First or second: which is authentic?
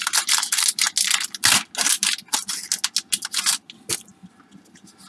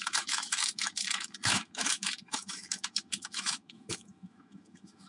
first